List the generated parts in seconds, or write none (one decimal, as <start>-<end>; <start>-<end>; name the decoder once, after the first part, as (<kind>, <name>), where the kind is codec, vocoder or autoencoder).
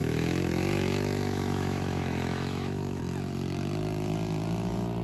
0.0-3.0 (autoencoder, DAC-VAE)